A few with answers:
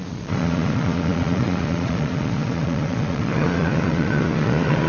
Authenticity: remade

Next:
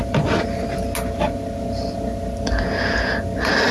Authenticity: recorded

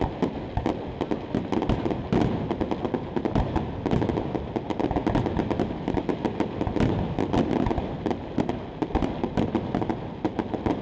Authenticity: recorded